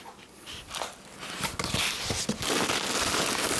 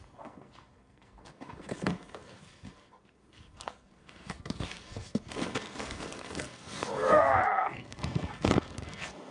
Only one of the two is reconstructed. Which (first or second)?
second